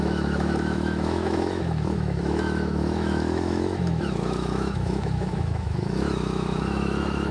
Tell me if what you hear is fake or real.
fake